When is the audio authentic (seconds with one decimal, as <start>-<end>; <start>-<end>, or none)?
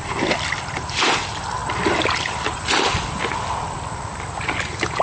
0.0-5.0